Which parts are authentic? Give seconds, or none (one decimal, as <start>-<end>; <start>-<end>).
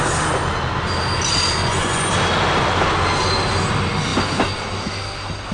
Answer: 0.0-1.6; 2.1-5.5